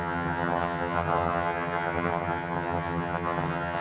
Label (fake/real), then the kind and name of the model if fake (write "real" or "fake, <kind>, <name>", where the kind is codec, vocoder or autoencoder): fake, vocoder, HiFi-GAN